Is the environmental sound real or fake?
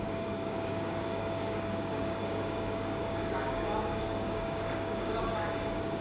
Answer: fake